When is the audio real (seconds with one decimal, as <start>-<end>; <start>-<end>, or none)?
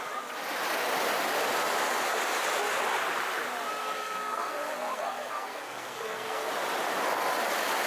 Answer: 0.0-3.8; 6.5-7.9